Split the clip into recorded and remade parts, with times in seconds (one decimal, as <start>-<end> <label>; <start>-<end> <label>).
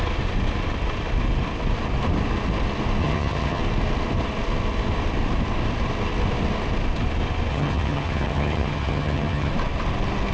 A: 0.0-3.0 recorded; 3.0-3.6 remade; 3.6-7.5 recorded; 7.5-9.5 remade; 9.5-10.3 recorded